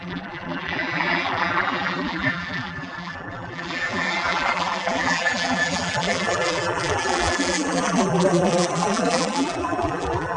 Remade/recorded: remade